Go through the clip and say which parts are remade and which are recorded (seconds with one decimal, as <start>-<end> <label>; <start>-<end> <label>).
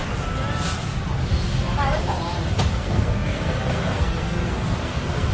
0.0-2.7 recorded; 2.7-5.3 remade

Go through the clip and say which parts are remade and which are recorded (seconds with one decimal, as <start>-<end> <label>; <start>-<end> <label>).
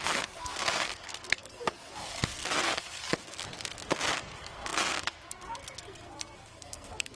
0.0-3.4 remade; 3.4-4.1 recorded; 4.1-7.1 remade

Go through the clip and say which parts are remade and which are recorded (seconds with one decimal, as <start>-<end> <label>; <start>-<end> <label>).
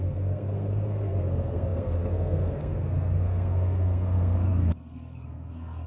0.0-5.9 remade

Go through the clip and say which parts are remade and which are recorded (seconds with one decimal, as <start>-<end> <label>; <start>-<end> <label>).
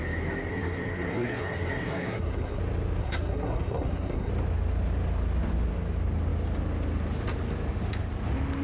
0.0-0.5 recorded; 0.5-2.6 remade; 2.6-3.0 recorded; 3.0-4.3 remade; 4.3-8.6 recorded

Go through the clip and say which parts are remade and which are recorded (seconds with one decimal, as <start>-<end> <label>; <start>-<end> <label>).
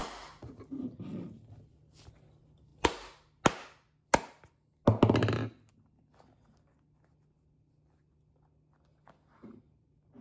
0.0-10.2 recorded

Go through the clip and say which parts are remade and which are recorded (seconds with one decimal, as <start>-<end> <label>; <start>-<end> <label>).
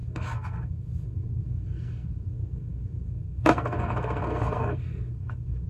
0.0-5.7 remade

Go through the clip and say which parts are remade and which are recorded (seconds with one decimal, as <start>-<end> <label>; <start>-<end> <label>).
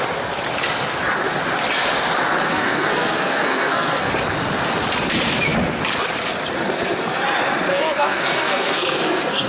0.0-2.5 recorded; 2.5-4.1 remade; 4.1-7.7 recorded; 7.7-9.5 remade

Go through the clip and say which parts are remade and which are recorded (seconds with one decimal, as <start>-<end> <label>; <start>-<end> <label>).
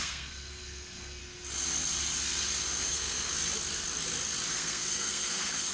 0.0-1.2 remade; 1.2-2.8 recorded; 2.8-3.3 remade; 3.3-4.5 recorded; 4.5-5.7 remade